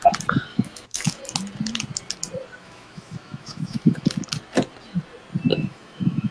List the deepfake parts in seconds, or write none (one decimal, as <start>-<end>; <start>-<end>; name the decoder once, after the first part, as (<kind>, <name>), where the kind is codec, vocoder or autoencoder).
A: 0.5-1.2 (autoencoder, DAC-VAE); 2.6-4.0; 5.5-6.3